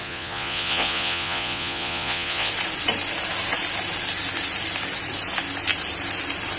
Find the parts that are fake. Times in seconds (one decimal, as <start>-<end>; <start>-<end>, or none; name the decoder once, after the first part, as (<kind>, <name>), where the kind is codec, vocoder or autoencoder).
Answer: 0.0-2.5 (vocoder, Vocos)